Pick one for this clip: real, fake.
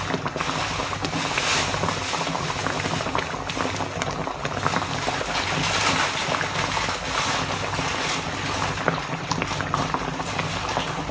real